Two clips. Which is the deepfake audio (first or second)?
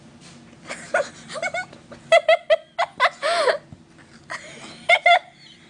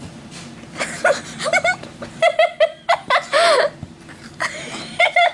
second